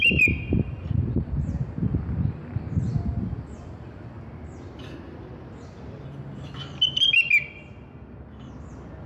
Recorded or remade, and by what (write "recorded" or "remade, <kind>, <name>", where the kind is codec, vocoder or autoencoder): recorded